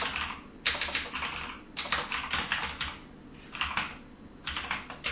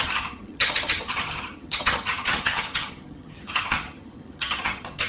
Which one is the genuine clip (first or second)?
first